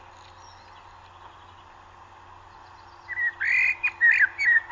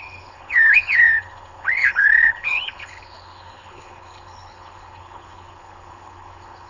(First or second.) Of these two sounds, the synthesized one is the second